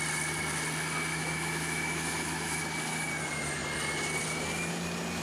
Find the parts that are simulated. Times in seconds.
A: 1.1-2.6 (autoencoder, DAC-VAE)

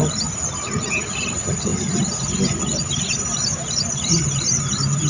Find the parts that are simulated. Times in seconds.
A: none

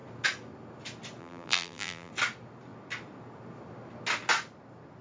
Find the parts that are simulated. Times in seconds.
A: 1.2-2.1 (vocoder, BigVGAN v2)

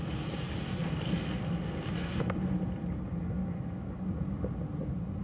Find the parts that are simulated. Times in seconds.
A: none